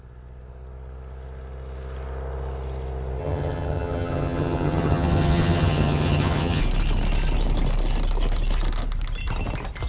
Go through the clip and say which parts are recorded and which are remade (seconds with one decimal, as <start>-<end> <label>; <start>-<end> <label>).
0.0-3.2 recorded; 3.2-6.6 remade; 6.6-9.9 recorded